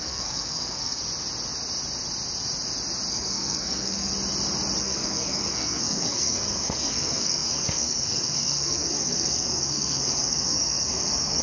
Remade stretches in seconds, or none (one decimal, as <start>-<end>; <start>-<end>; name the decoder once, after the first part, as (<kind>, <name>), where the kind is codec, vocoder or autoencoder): 0.0-1.0 (codec, SNAC); 3.1-4.1; 4.8-11.4